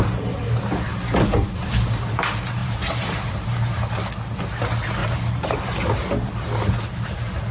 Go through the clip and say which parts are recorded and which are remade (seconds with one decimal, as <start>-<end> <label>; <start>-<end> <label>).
0.0-2.6 recorded; 2.6-3.9 remade; 3.9-5.0 recorded; 5.0-5.6 remade; 5.6-7.5 recorded